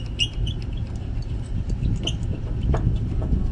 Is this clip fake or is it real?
real